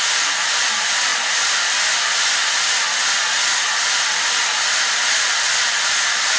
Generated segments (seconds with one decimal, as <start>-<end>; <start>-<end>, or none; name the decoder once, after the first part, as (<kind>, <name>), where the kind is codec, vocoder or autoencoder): none